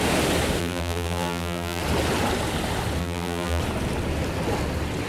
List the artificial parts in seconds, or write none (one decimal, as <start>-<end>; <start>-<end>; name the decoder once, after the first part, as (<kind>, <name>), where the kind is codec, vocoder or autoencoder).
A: 0.6-1.8 (vocoder, BigVGAN v2); 3.0-3.6